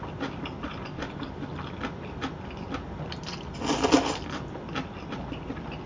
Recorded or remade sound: recorded